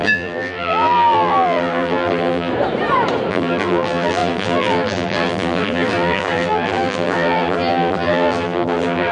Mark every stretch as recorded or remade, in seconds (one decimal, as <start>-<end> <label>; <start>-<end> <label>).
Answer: 0.0-2.5 remade; 2.5-3.3 recorded; 3.3-9.1 remade